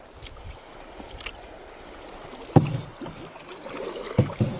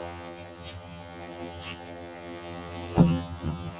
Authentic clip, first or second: first